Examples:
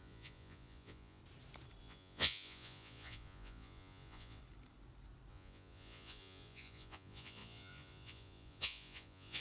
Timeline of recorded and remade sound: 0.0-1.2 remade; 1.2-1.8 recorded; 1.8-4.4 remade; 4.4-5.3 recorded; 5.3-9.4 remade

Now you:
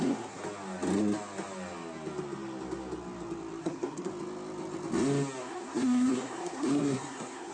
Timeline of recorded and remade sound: 0.0-0.4 remade; 0.4-3.6 recorded; 3.6-4.1 remade; 4.1-5.4 recorded; 5.4-7.5 remade

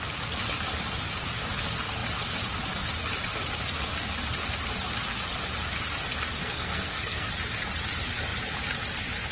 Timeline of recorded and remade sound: 0.0-6.4 recorded; 6.4-7.3 remade; 7.3-9.3 recorded

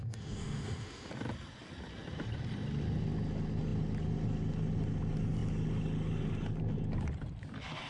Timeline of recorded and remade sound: 0.0-1.1 remade; 1.1-7.9 recorded

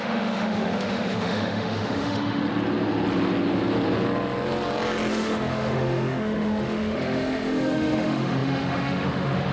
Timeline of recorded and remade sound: 0.0-2.4 remade; 2.4-5.1 recorded; 5.1-9.5 remade